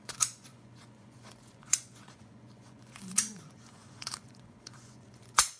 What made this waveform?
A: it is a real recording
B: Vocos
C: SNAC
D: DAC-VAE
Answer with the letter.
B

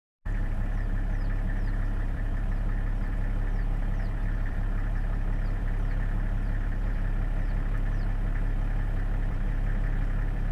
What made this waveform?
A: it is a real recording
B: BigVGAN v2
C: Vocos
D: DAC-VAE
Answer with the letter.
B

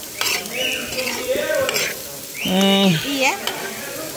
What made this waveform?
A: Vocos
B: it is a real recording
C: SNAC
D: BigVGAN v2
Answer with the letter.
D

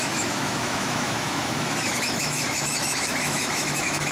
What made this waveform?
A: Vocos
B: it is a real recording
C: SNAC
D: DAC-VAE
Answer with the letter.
D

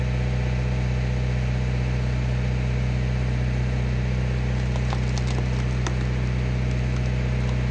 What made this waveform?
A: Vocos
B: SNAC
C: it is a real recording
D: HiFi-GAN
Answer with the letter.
C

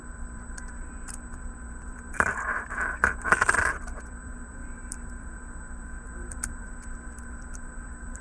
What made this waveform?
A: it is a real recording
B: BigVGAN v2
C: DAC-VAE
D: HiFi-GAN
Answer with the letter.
B